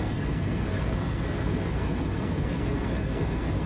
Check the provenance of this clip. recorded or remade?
remade